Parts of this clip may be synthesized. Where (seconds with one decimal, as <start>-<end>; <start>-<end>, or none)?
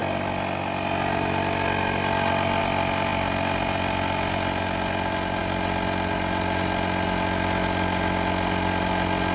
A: none